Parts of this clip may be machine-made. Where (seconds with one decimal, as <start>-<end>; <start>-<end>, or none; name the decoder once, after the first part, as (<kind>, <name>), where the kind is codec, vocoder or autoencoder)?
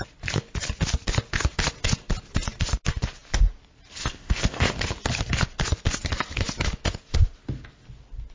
4.0-4.7 (codec, ZipCodec)